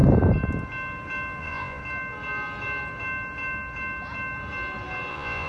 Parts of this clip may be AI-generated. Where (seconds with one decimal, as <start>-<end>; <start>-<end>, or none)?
1.4-1.8; 5.1-5.5